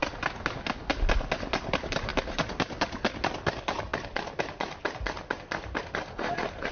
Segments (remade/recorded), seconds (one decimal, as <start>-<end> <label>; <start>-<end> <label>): 0.0-6.7 recorded